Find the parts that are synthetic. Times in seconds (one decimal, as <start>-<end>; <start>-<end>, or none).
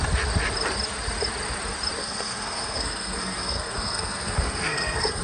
2.0-5.2